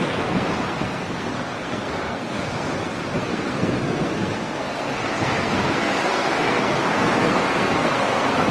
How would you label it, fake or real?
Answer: fake